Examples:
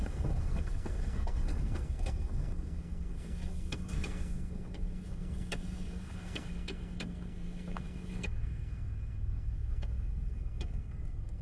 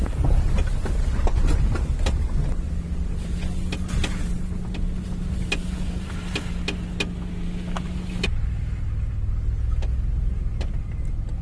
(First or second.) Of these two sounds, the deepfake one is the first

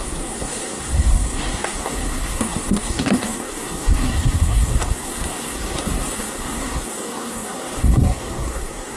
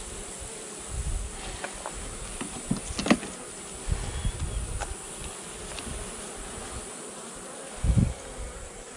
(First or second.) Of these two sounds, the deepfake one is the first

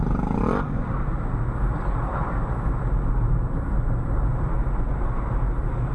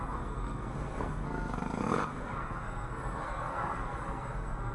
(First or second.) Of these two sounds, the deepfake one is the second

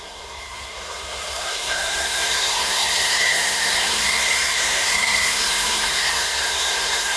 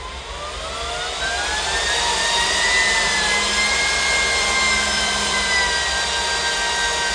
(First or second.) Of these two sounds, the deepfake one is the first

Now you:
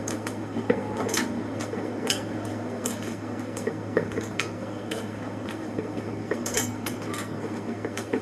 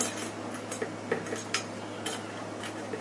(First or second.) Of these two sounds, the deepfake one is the first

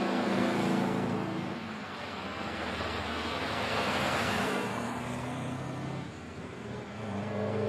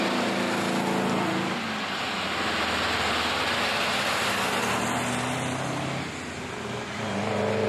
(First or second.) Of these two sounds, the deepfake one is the first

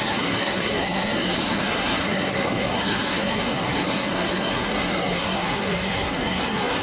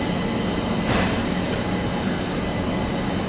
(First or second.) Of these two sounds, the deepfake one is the first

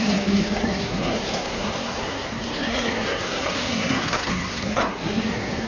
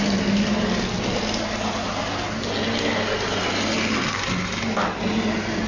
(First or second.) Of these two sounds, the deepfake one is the first